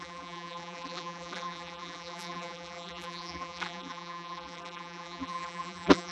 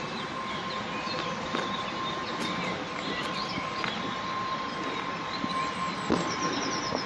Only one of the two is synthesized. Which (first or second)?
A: first